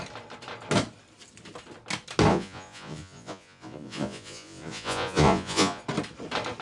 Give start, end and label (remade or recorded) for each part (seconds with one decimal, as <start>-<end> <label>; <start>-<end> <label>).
0.0-2.3 recorded; 2.3-5.8 remade; 5.8-6.6 recorded